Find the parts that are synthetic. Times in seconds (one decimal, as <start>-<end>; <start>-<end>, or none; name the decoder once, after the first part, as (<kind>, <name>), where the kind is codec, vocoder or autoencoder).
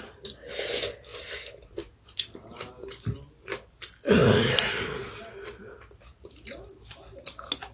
none